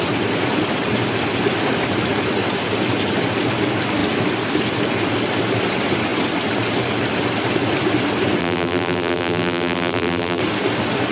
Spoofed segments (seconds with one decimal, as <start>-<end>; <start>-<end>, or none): 8.4-10.4